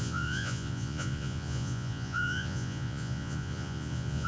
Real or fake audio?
fake